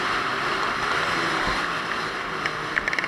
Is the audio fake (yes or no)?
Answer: no